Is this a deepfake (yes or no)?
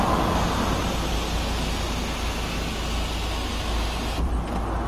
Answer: no